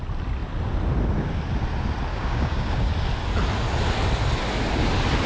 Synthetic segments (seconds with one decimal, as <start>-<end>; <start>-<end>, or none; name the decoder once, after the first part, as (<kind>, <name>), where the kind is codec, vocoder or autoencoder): 2.1-2.9 (codec, DAC)